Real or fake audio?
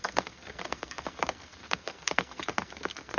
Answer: fake